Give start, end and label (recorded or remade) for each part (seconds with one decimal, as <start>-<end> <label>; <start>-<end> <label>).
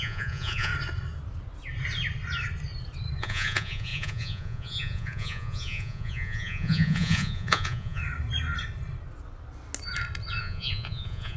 0.0-0.7 remade; 0.7-3.2 recorded; 3.2-8.0 remade; 8.0-10.4 recorded; 10.4-11.4 remade